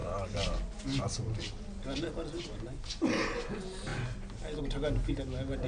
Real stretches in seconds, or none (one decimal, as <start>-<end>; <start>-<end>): 0.0-5.7